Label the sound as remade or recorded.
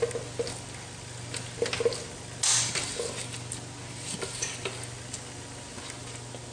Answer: recorded